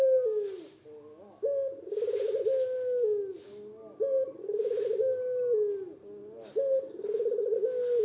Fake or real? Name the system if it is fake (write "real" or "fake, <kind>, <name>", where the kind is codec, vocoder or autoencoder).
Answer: real